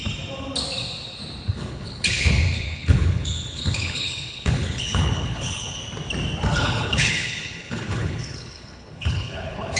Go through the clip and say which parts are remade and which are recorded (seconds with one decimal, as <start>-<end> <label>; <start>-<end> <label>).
0.0-1.5 recorded; 1.5-5.8 remade; 5.8-6.5 recorded; 6.5-9.8 remade